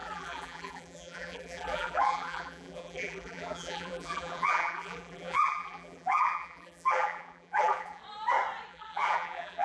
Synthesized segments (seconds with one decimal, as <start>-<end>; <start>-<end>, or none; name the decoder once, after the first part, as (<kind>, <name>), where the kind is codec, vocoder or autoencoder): 0.0-8.0 (vocoder, BigVGAN v2); 8.7-9.6